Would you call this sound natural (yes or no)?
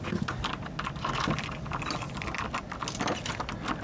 yes